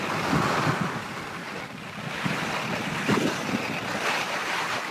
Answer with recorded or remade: recorded